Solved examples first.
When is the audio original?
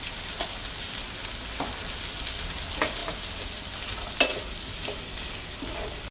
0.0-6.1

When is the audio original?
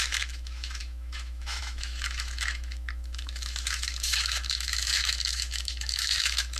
none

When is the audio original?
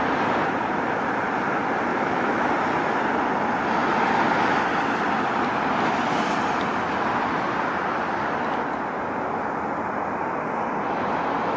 0.0-1.9; 2.5-11.6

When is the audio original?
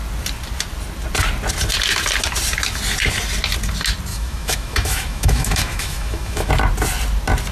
0.0-4.1; 6.5-7.5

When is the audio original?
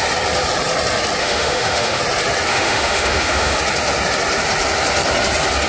0.0-1.2; 2.0-2.5; 3.6-5.7